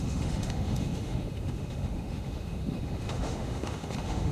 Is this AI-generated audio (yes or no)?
yes